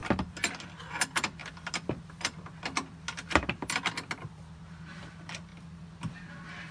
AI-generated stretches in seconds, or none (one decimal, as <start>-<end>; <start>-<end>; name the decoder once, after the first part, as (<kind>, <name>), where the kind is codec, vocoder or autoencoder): none